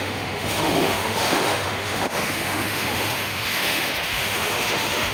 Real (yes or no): no